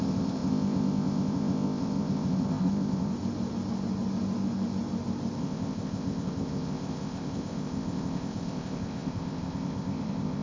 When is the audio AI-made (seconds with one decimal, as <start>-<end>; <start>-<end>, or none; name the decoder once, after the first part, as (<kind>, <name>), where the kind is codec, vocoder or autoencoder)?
0.0-3.1 (codec, ZipCodec); 5.4-10.4

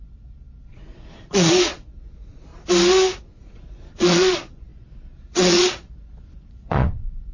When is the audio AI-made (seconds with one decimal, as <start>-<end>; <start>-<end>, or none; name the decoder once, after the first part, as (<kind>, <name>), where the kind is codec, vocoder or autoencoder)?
0.0-2.5 (vocoder, Vocos); 3.2-7.3

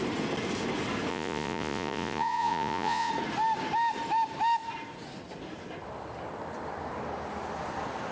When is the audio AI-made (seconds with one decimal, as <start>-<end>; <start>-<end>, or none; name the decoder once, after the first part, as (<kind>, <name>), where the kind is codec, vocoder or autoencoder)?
1.1-3.1 (vocoder, Vocos)

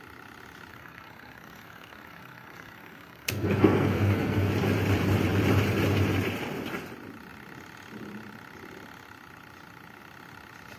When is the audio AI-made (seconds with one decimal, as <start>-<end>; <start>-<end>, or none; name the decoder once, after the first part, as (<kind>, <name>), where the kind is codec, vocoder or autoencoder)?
0.7-4.5 (codec, SNAC)

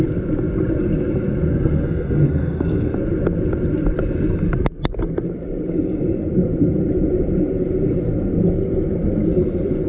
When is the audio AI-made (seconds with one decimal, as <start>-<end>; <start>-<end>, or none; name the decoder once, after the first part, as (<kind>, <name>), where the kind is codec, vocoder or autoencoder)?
1.5-2.9 (codec, SNAC)

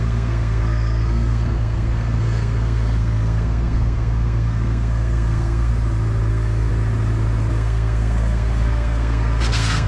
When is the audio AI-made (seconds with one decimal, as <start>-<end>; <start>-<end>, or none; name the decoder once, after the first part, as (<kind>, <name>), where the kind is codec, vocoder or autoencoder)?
0.0-5.7 (codec, SNAC); 6.3-6.7; 7.5-9.9

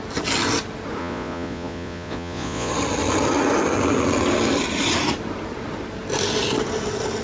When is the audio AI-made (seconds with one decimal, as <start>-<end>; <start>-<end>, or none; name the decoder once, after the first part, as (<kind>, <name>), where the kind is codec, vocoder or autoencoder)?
1.0-2.7 (vocoder, Vocos)

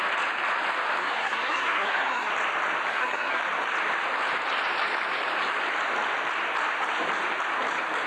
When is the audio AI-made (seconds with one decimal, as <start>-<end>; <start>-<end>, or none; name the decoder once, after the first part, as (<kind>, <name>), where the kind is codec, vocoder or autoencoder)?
1.0-2.3 (codec, SNAC); 2.9-3.4